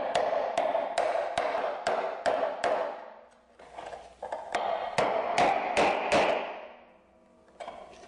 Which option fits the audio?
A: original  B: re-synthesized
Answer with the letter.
A